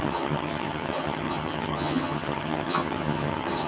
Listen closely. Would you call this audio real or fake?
fake